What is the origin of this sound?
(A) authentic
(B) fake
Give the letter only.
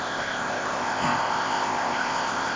B